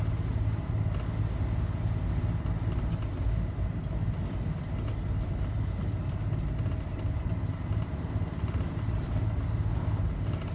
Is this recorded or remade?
recorded